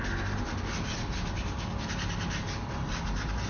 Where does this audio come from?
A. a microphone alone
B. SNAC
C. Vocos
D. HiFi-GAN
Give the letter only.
A